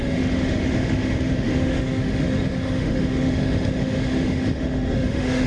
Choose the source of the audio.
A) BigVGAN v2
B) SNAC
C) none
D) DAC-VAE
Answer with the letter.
D